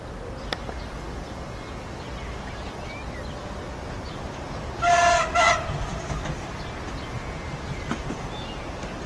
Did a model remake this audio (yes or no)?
no